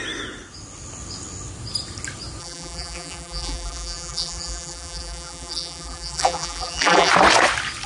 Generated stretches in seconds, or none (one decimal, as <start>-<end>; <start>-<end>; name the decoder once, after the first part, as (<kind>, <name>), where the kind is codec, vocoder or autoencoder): 2.4-7.1 (vocoder, BigVGAN v2)